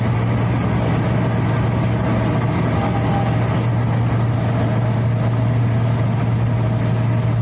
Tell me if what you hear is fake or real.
real